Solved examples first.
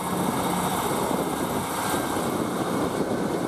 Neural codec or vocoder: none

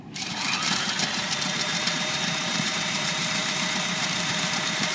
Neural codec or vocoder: vocoder, BigVGAN v2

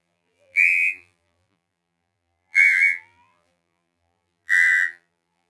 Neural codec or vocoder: vocoder, BigVGAN v2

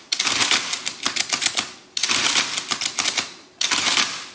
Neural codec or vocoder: none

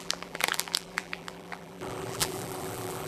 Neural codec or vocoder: vocoder, BigVGAN v2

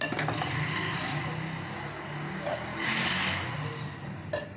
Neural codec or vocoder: none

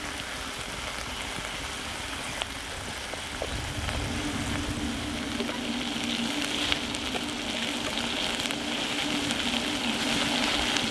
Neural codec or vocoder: none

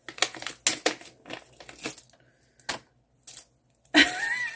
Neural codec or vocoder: none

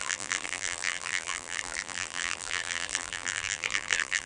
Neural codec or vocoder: vocoder, BigVGAN v2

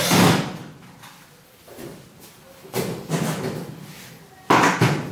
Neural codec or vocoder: vocoder, BigVGAN v2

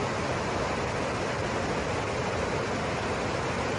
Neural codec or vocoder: none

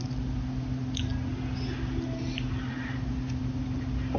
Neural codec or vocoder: none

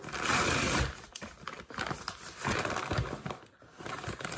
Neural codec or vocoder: none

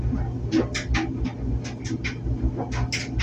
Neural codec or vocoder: none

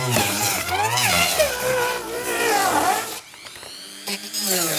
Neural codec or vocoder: vocoder, BigVGAN v2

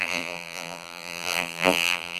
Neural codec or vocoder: vocoder, BigVGAN v2